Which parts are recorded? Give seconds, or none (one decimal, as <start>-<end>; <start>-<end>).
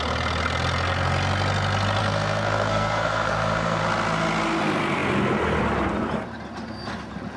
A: 0.0-2.0; 3.8-7.4